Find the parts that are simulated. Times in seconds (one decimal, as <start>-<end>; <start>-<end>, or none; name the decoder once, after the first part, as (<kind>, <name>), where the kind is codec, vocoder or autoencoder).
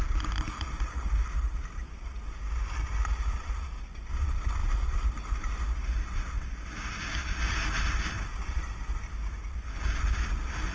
none